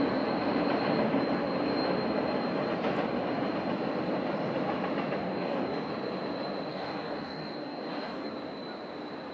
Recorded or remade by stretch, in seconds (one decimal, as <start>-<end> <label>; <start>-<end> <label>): 0.0-5.2 recorded; 5.2-5.9 remade; 5.9-6.7 recorded; 6.7-8.3 remade; 8.3-9.3 recorded